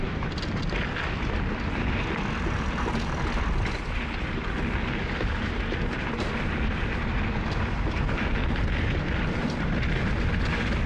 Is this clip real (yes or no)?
yes